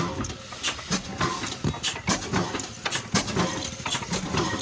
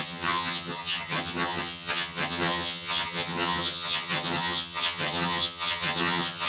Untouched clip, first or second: first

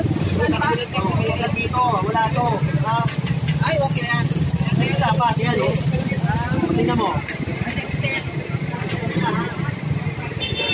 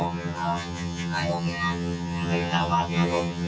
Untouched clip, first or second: first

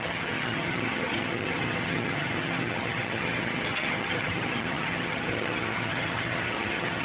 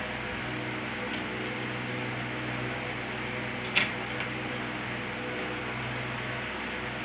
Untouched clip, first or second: second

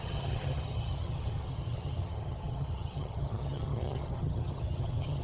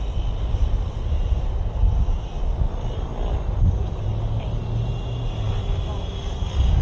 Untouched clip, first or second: second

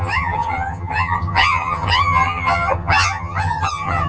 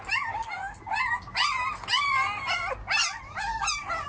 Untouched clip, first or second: second